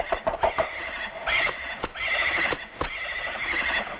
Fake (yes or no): no